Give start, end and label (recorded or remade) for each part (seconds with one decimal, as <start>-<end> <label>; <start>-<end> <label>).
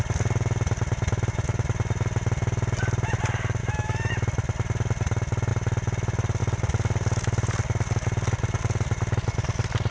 0.0-3.6 recorded; 3.6-4.1 remade; 4.1-9.9 recorded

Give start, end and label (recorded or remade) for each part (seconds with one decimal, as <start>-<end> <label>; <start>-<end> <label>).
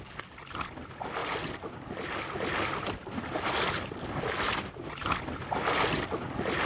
0.0-6.7 recorded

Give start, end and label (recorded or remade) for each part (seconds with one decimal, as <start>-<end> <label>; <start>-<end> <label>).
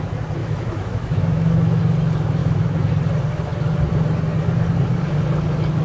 0.0-0.4 recorded; 0.4-1.8 remade; 1.8-2.4 recorded; 2.4-2.9 remade; 2.9-5.8 recorded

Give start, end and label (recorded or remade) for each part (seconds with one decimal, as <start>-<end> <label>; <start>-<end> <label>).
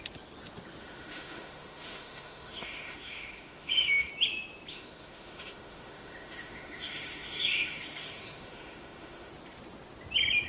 0.0-0.8 recorded; 0.8-4.1 remade; 4.1-4.7 recorded; 4.7-9.3 remade; 9.3-10.5 recorded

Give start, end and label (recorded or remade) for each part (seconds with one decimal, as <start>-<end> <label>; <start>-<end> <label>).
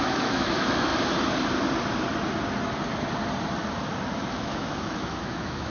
0.0-0.9 remade; 0.9-4.3 recorded; 4.3-5.7 remade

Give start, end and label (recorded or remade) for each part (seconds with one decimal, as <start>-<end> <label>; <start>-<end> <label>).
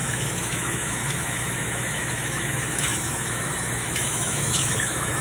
0.0-5.2 remade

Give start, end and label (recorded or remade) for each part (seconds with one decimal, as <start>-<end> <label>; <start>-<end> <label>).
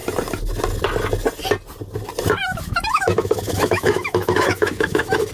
0.0-2.4 recorded; 2.4-5.3 remade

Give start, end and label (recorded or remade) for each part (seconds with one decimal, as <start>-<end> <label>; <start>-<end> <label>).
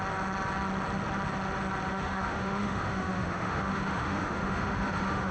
0.0-1.9 recorded; 1.9-5.3 remade